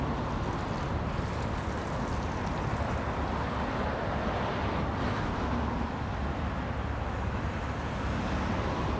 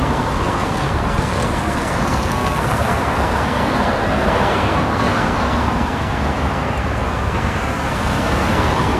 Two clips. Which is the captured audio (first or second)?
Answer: first